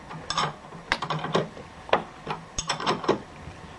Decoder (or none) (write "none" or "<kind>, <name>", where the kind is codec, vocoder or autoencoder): none